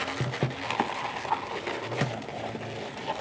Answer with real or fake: real